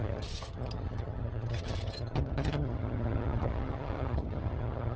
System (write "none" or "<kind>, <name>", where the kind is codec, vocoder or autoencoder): vocoder, HiFi-GAN